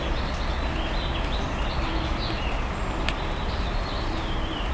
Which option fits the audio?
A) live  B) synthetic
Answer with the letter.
A